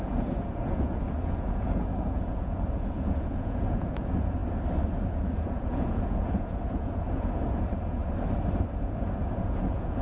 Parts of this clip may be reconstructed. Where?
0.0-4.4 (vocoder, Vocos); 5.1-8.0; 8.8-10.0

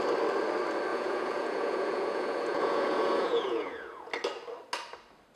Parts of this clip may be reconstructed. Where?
0.9-4.1 (vocoder, Vocos)

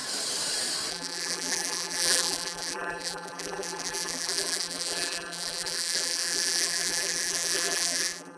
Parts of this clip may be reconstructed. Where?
0.9-8.4 (vocoder, BigVGAN v2)

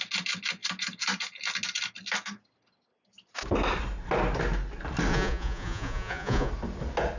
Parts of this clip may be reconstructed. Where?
5.1-6.5 (vocoder, Vocos)

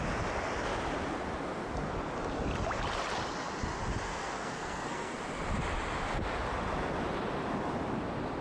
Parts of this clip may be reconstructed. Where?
4.1-5.2 (codec, SNAC)

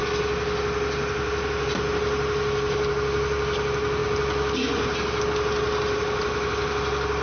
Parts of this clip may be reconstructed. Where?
none

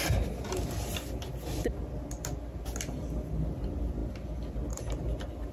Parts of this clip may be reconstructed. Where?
none

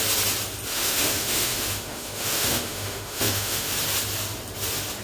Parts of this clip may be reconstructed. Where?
0.7-3.7 (autoencoder, DAC-VAE)